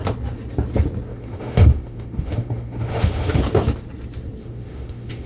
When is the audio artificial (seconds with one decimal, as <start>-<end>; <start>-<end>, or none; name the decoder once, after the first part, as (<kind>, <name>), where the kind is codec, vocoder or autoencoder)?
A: 1.1-3.4 (autoencoder, DAC-VAE); 4.4-5.3